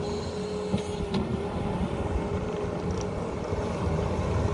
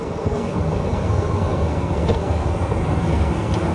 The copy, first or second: second